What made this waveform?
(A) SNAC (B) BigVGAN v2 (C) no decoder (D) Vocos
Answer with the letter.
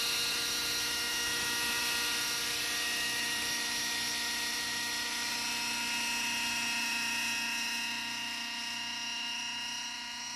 C